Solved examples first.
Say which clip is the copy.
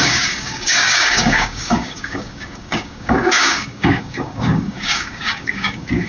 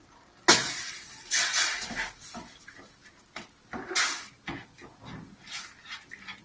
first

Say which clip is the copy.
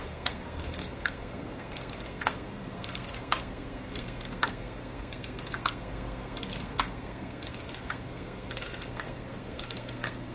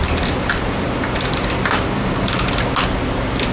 first